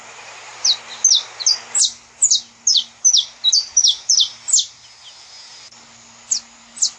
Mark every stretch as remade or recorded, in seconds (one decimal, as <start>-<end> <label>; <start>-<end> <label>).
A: 0.0-7.0 recorded

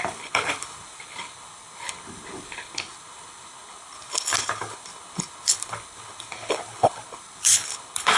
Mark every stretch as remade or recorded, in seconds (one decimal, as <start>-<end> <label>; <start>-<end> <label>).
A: 0.0-8.2 remade

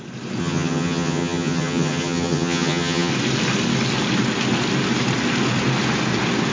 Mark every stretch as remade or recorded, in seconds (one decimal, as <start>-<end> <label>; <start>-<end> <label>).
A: 0.0-0.4 recorded; 0.4-3.1 remade; 3.1-6.5 recorded

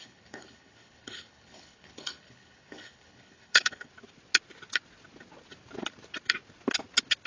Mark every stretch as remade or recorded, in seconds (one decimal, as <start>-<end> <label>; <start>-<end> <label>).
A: 0.0-3.9 remade; 3.9-7.3 recorded

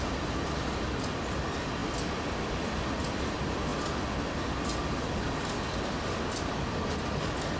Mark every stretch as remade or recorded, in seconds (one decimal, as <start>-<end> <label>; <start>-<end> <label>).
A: 0.0-7.6 recorded

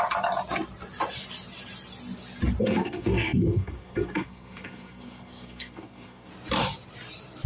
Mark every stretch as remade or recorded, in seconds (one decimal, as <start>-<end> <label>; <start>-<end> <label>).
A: 0.0-2.6 recorded; 2.6-6.3 remade; 6.3-7.5 recorded